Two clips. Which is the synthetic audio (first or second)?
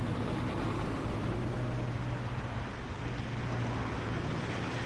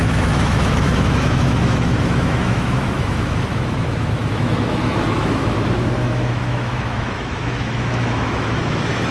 second